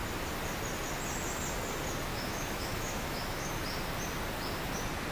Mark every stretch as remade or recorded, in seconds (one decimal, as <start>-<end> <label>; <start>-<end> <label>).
0.0-2.1 recorded; 2.1-3.5 remade; 3.5-5.1 recorded